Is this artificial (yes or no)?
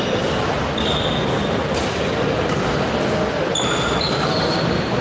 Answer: no